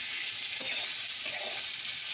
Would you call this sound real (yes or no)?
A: yes